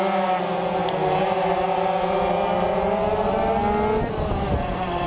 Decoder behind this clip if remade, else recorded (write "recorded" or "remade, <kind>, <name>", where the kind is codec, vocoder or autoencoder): recorded